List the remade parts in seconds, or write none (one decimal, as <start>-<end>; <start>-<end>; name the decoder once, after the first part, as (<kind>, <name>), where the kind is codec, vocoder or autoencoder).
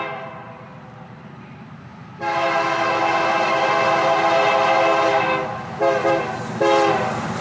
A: none